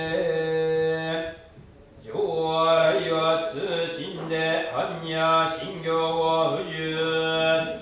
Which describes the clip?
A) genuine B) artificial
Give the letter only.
A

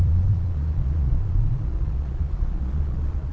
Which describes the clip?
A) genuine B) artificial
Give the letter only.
B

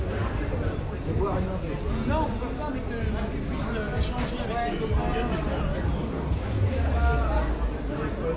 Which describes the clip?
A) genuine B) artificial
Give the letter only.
A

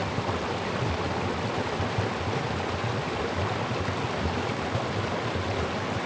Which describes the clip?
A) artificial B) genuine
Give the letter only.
B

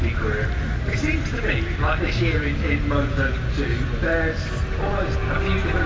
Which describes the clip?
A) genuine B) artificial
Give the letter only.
A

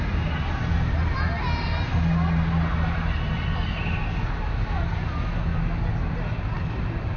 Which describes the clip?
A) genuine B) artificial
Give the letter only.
A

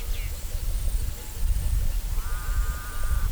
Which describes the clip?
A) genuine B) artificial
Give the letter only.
A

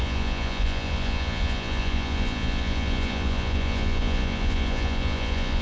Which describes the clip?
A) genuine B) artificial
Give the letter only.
B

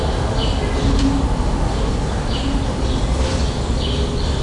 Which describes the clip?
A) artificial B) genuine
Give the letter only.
B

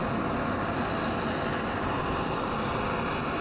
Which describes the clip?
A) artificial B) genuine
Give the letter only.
B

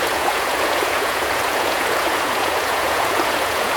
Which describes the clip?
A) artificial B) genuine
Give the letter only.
A